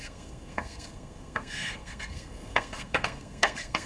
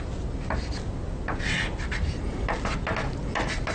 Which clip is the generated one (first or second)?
first